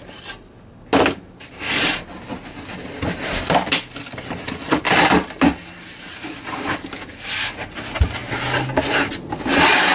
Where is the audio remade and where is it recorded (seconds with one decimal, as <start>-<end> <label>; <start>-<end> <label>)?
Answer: 0.0-9.9 recorded